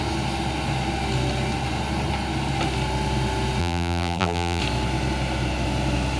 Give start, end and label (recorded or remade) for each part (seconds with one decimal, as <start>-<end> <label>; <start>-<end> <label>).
0.0-3.6 recorded; 3.6-4.6 remade; 4.6-6.2 recorded